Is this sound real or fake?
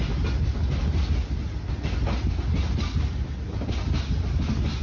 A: real